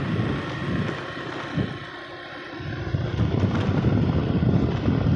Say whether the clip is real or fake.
fake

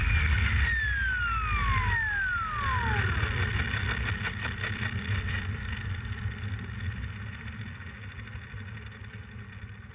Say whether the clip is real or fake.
real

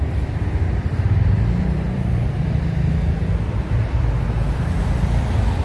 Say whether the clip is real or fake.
fake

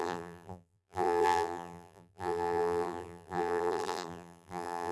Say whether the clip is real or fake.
fake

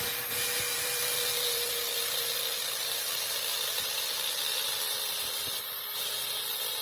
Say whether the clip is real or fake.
fake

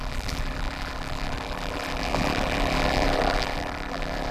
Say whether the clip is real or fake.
fake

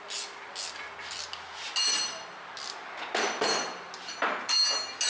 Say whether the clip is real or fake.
real